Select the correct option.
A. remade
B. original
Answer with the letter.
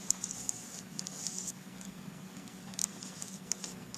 A